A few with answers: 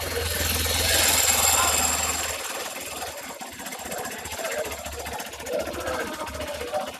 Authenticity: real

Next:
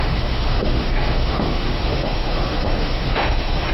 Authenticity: fake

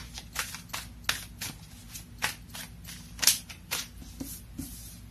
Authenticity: real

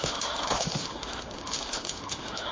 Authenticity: fake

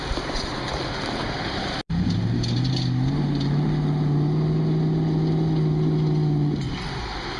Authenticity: real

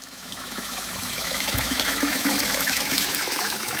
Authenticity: fake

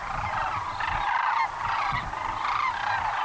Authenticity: real